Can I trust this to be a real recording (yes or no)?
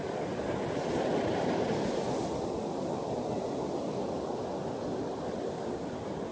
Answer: yes